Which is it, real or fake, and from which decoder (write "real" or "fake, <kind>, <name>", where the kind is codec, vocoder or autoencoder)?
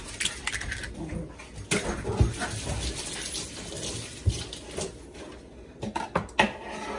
real